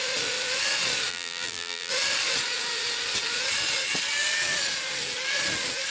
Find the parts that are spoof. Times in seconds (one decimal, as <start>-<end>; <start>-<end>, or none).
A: 1.1-1.9